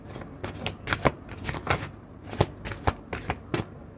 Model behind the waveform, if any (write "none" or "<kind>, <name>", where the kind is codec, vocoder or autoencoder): none